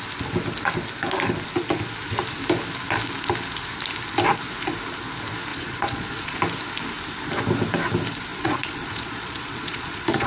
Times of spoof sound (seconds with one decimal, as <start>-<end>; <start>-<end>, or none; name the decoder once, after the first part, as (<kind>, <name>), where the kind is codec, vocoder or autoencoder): 5.5-6.4 (vocoder, Vocos); 8.3-10.3